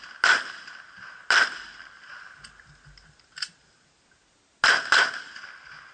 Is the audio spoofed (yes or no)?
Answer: no